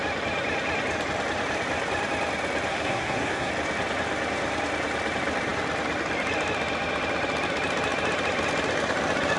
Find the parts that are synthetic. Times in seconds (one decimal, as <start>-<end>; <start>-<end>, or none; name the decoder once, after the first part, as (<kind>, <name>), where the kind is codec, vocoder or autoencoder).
2.7-3.5 (codec, SNAC)